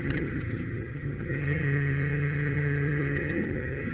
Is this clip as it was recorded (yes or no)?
no